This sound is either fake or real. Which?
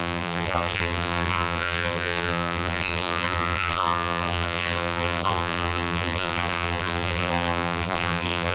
fake